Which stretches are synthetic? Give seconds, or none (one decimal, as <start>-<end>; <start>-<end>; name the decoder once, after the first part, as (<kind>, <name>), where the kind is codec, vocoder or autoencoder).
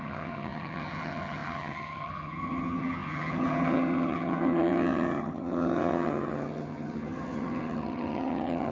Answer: 0.0-8.7 (vocoder, HiFi-GAN)